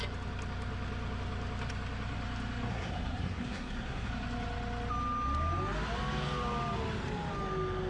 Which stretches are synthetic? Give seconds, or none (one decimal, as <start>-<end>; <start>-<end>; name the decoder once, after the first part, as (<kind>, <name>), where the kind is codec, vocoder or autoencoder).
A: 2.7-4.1 (codec, SNAC)